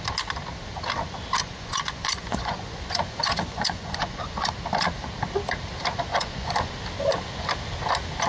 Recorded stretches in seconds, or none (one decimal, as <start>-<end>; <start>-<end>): 0.0-1.4; 4.5-6.1; 6.7-8.3